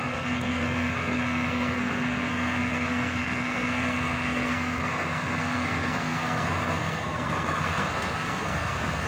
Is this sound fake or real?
fake